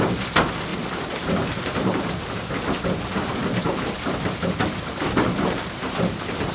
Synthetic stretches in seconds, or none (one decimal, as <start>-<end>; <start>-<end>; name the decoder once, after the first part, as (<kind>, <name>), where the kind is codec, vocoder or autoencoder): 0.7-2.1 (vocoder, BigVGAN v2)